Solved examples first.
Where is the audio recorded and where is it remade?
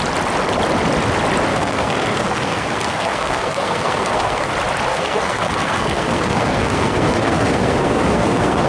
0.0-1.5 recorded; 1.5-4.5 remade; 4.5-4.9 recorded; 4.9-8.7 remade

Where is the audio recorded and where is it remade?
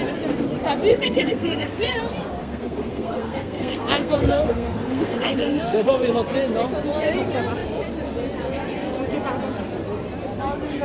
0.0-0.9 recorded; 0.9-2.0 remade; 2.0-2.4 recorded; 2.4-5.9 remade; 5.9-10.8 recorded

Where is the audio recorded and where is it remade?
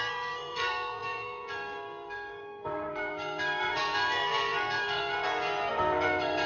0.0-6.5 remade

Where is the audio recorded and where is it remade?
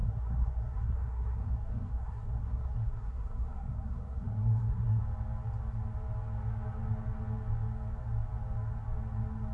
0.0-5.0 remade; 5.0-9.5 recorded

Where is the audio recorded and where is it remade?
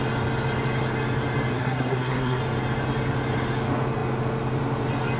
0.0-1.5 recorded; 1.5-2.4 remade; 2.4-5.2 recorded